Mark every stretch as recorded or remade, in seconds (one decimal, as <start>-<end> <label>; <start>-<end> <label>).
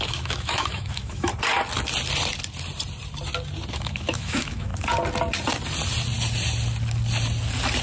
0.0-1.3 remade; 1.3-3.7 recorded; 3.7-4.7 remade; 4.7-7.8 recorded